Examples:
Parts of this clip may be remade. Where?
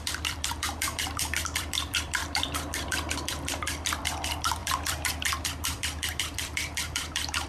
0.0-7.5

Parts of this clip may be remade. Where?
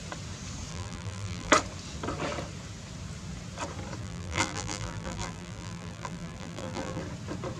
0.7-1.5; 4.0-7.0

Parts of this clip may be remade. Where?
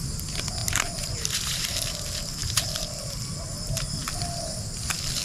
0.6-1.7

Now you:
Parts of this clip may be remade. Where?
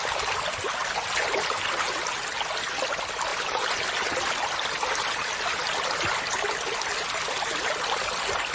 none